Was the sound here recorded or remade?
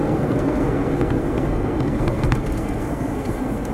remade